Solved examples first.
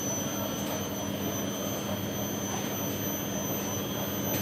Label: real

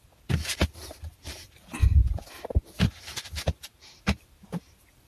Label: fake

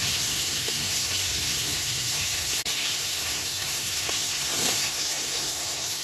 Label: fake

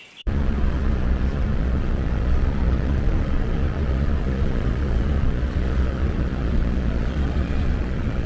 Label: fake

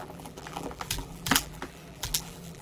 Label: fake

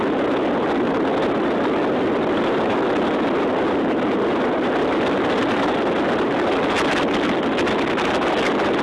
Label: real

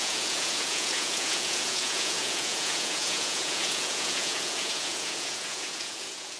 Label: fake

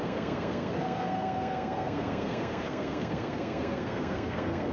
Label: fake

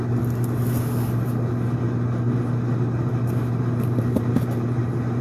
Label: real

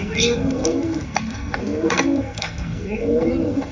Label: fake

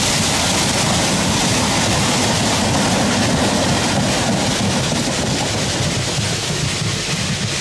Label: real